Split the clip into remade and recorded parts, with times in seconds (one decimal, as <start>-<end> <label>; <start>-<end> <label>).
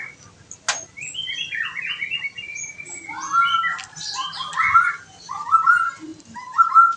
0.0-7.0 recorded